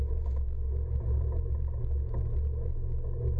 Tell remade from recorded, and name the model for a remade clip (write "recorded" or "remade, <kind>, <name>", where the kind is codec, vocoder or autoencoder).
recorded